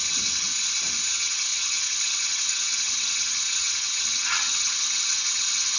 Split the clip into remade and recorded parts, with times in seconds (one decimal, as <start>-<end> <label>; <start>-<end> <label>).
0.0-0.5 remade; 0.5-1.1 recorded; 1.1-5.8 remade